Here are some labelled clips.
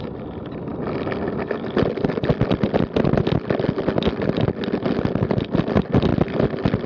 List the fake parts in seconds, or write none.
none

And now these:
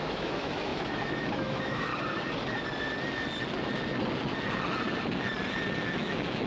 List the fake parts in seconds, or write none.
0.0-1.9 (autoencoder, DAC-VAE); 5.8-6.5

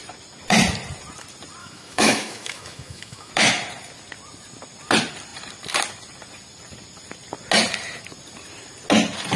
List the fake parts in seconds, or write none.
1.6-3.3 (autoencoder, DAC-VAE)

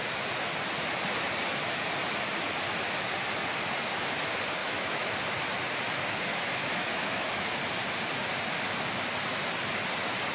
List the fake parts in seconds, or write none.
4.6-5.1 (autoencoder, DAC-VAE); 6.3-7.4

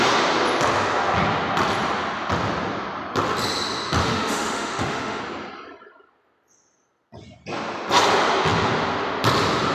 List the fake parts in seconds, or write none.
4.0-5.2 (autoencoder, DAC-VAE)

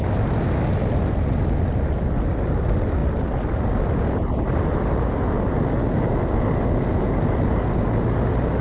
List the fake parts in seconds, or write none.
none

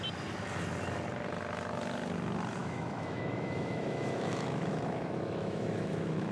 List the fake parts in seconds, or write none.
2.6-6.3 (autoencoder, DAC-VAE)